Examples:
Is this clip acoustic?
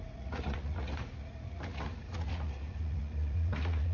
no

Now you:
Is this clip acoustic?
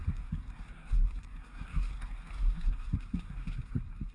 no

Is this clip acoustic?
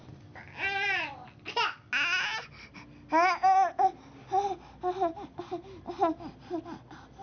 yes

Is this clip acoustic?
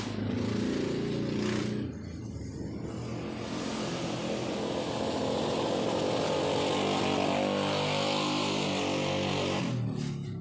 yes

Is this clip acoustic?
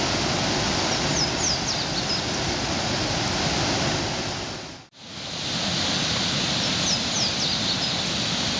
yes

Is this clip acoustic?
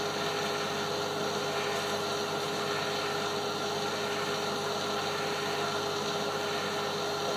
yes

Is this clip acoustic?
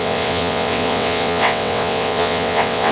no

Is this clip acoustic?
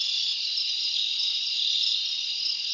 yes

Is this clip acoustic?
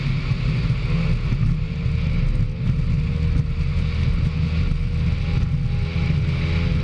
yes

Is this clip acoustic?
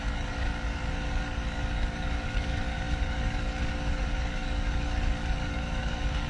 no